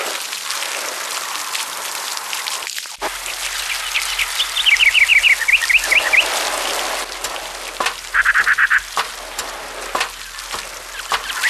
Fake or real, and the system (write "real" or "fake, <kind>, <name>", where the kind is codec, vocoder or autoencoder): real